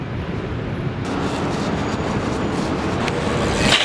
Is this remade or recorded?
recorded